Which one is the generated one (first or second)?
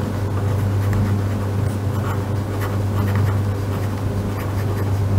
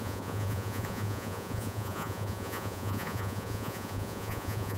second